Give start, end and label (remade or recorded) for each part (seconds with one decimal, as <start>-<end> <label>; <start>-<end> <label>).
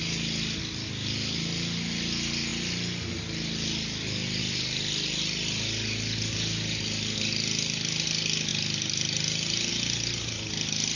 0.0-11.0 recorded